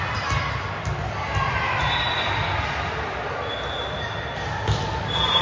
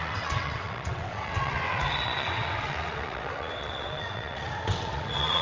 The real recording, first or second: first